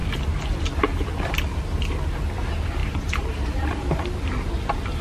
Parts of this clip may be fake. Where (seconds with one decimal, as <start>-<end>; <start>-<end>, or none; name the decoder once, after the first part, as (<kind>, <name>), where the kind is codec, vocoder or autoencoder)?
2.8-3.6 (vocoder, BigVGAN v2)